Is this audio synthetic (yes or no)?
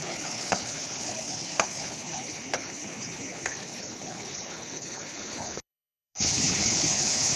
yes